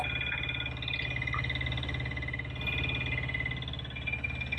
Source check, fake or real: real